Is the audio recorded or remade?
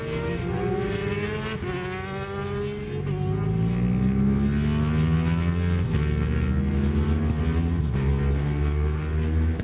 recorded